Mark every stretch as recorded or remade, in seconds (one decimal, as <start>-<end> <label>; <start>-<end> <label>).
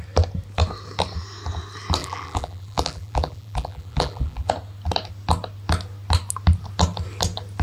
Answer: 0.0-2.0 recorded; 2.0-4.5 remade; 4.5-7.6 recorded